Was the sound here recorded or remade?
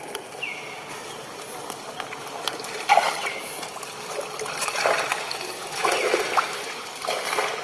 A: recorded